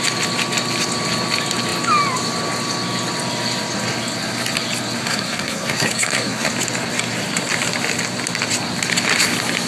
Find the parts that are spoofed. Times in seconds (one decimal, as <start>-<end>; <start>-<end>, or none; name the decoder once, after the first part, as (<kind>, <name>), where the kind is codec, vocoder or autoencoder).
5.0-6.5 (codec, SNAC)